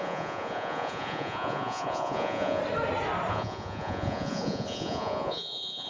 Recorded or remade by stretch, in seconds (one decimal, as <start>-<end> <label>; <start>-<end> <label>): 0.0-2.6 remade; 2.6-3.3 recorded; 3.3-5.9 remade